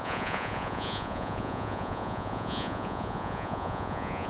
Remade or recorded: remade